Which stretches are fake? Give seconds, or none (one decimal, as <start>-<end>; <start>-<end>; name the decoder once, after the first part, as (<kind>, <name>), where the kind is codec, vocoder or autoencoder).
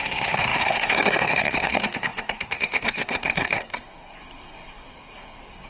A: 0.0-5.7 (codec, SNAC)